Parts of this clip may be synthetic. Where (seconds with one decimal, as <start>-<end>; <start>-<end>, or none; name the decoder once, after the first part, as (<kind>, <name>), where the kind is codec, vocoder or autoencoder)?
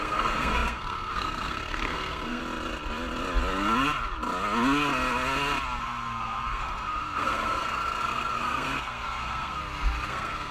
0.0-2.4 (codec, SNAC); 5.8-9.6; 10.1-10.5